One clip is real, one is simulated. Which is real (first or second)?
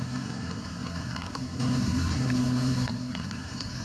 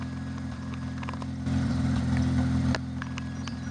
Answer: second